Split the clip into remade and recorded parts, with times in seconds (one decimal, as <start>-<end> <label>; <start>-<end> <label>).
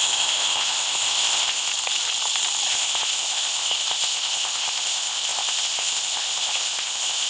0.0-1.7 remade; 1.7-2.7 recorded; 2.7-7.3 remade